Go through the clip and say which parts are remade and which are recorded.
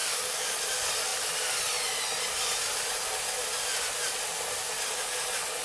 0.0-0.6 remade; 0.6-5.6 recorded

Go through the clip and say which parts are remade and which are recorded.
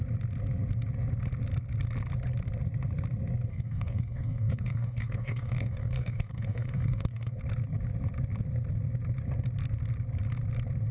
0.0-3.5 recorded; 3.5-7.4 remade; 7.4-10.9 recorded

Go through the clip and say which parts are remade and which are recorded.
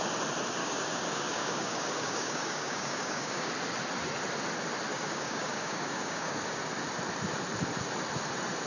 0.0-0.6 recorded; 0.6-3.5 remade; 3.5-4.9 recorded; 4.9-6.6 remade; 6.6-8.7 recorded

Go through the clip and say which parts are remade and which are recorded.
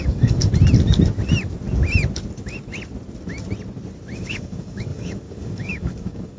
0.0-0.5 remade; 0.5-4.3 recorded; 4.3-6.4 remade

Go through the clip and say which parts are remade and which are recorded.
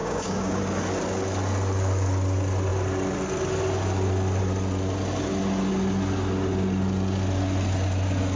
0.0-0.6 remade; 0.6-8.4 recorded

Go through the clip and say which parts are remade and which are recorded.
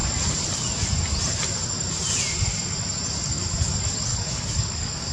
0.0-4.1 recorded; 4.1-5.1 remade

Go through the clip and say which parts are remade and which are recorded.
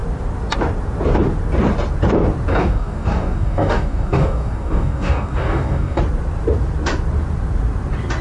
0.0-2.5 recorded; 2.5-6.0 remade; 6.0-8.2 recorded